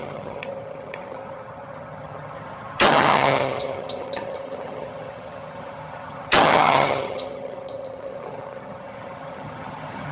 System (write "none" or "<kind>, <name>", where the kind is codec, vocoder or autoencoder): vocoder, HiFi-GAN